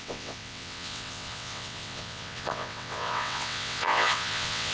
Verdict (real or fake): fake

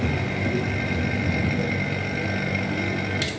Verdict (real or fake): real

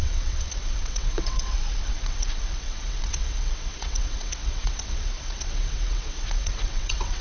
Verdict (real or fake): fake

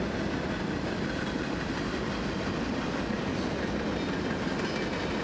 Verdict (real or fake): real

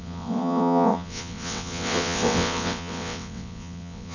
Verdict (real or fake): fake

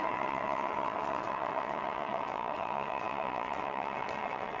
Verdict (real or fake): fake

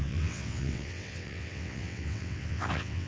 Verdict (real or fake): fake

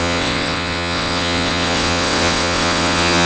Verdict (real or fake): fake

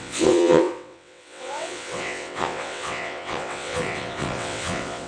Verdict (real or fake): fake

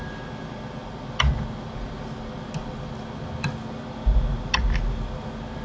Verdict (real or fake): real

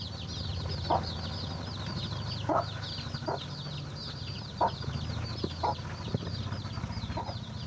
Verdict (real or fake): real